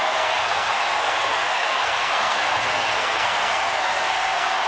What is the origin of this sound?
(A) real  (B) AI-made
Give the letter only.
B